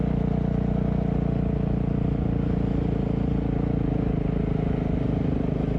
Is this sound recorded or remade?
recorded